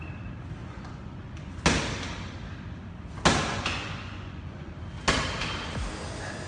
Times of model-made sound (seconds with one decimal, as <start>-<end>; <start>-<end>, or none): 0.6-1.5; 3.5-4.7